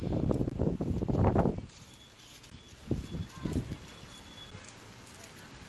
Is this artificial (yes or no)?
no